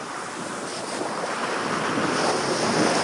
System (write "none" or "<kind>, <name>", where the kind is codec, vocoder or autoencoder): none